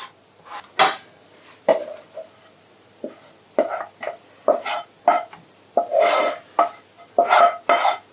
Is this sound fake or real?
real